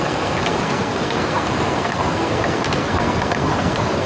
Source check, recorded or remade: remade